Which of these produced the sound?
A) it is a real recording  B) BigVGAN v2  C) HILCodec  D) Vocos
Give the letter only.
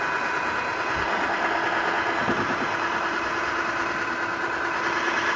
A